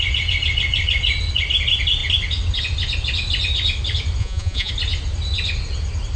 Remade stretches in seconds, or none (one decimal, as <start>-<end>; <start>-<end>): 4.2-4.7